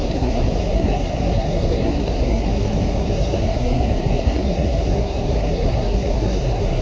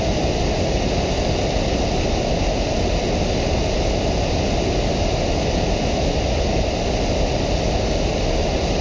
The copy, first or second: first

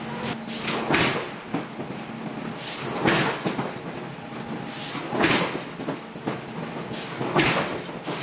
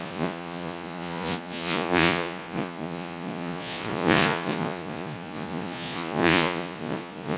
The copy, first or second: second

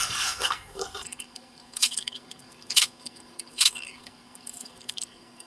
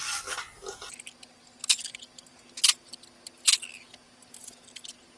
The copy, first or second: first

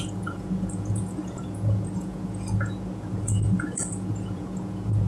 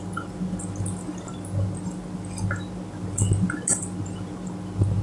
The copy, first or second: first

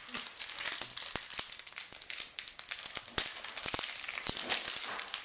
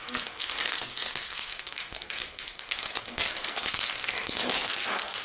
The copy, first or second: second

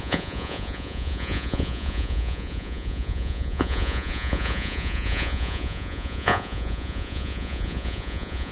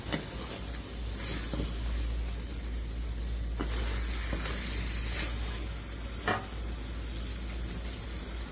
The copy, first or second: first